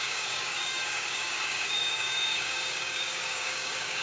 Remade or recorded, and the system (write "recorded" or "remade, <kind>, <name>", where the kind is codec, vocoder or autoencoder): remade, codec, DAC